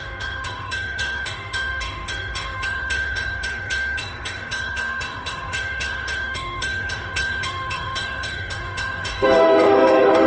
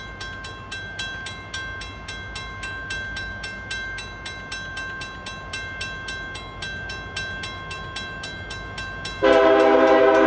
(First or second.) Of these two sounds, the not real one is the first